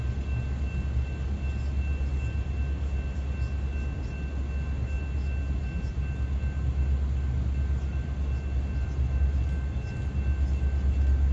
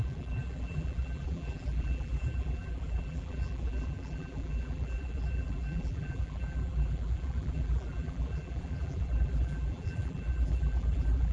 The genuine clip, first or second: first